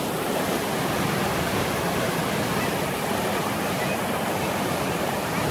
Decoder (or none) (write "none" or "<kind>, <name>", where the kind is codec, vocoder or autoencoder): none